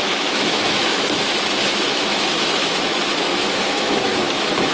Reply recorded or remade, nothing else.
remade